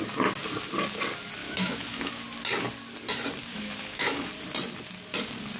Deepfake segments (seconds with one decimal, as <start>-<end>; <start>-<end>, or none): 1.4-2.1; 3.5-4.3